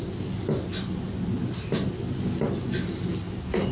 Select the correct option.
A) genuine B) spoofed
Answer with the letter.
A